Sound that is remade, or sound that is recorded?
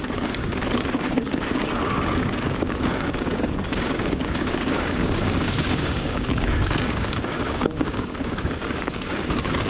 remade